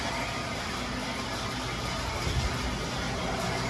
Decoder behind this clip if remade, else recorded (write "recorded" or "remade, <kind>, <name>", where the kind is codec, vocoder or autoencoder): recorded